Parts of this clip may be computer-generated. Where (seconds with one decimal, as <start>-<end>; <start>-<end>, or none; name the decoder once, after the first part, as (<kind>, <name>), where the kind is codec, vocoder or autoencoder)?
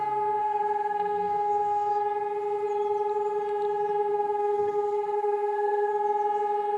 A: 0.4-1.9 (codec, SNAC); 4.1-5.9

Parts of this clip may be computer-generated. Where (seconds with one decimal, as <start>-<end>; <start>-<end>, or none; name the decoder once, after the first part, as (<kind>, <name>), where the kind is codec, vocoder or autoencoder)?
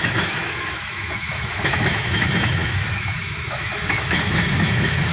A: 0.0-5.1 (autoencoder, DAC-VAE)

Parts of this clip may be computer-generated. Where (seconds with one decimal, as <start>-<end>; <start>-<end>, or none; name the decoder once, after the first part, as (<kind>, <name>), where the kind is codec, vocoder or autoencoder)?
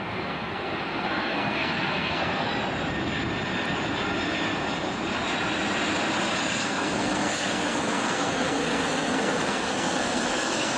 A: 0.0-2.5 (codec, SNAC); 6.4-10.8